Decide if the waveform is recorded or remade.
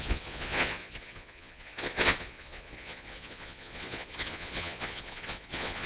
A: remade